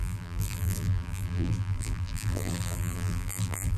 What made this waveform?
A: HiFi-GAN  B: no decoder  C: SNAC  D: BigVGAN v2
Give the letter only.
D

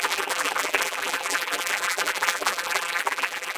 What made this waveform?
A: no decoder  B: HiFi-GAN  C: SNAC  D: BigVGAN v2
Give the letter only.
D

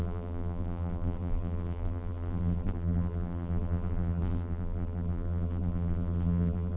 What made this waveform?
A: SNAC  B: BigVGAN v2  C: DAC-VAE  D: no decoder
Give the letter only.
B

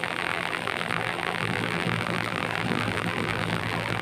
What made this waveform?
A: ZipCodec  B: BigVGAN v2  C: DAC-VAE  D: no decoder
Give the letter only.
B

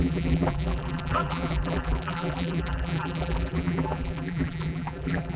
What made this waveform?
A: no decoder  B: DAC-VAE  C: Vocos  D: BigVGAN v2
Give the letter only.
D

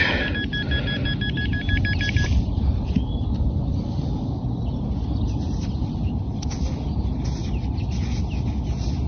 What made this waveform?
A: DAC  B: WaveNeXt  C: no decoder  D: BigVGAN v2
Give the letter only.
C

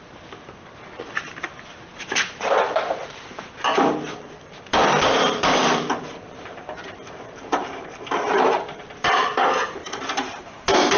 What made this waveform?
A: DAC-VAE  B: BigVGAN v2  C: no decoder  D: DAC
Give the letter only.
B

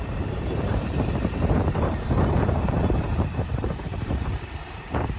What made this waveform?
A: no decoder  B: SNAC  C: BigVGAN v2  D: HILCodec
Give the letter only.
C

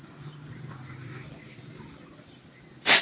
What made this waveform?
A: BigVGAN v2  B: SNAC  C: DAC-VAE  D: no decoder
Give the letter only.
D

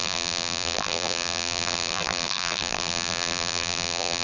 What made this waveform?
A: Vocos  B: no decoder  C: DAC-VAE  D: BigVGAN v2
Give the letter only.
D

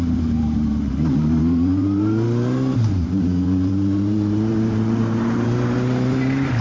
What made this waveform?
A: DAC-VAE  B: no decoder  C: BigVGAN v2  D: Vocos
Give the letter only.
C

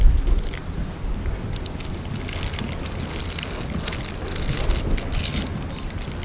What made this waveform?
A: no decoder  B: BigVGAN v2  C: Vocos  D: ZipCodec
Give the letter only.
A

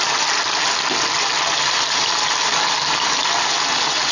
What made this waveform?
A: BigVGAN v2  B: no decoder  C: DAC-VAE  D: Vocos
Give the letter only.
B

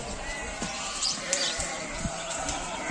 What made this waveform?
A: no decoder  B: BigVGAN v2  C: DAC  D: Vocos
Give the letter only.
B